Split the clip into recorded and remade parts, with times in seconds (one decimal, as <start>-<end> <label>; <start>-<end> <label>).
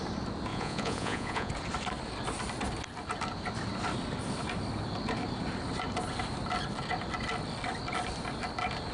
0.0-0.5 recorded; 0.5-1.5 remade; 1.5-8.9 recorded